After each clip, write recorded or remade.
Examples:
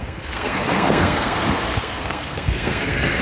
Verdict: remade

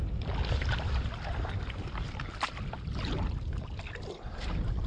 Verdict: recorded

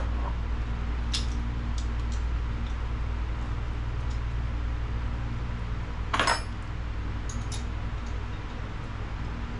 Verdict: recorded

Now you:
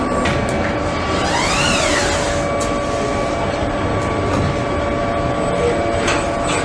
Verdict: recorded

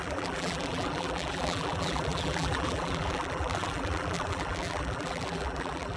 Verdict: remade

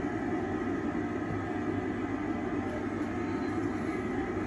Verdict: recorded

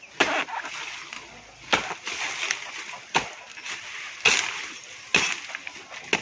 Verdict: recorded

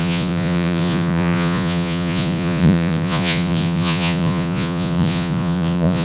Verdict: remade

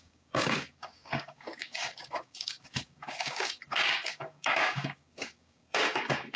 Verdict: remade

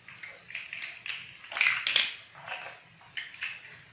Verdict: recorded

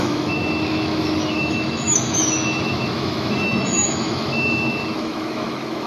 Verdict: remade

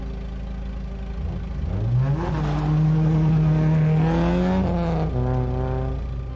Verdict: recorded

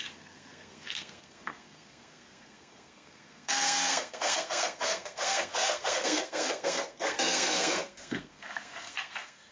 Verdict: remade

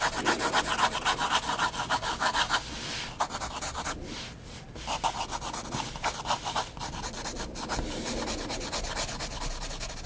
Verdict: recorded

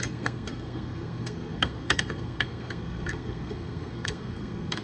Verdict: remade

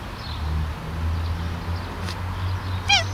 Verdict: recorded